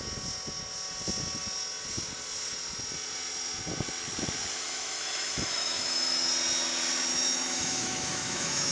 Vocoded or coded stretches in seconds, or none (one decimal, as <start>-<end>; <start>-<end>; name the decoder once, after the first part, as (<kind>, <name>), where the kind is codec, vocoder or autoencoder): 4.5-6.3 (autoencoder, DAC-VAE); 7.1-8.7